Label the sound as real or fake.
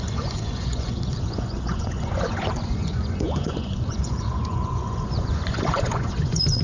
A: fake